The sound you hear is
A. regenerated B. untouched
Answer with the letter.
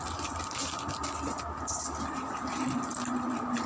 B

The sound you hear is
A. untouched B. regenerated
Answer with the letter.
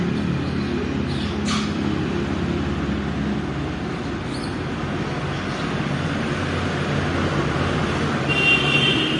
A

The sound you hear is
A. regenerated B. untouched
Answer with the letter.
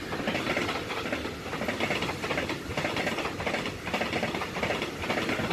B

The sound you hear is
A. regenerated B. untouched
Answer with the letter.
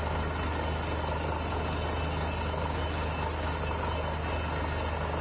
B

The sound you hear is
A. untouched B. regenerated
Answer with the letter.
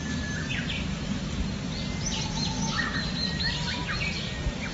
A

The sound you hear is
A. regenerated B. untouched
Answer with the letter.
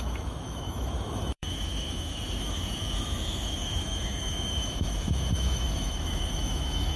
A